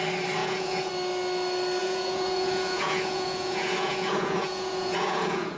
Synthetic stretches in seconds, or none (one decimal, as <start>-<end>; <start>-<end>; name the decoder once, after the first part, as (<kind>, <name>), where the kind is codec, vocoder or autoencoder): 0.4-0.9 (vocoder, Vocos); 1.8-5.6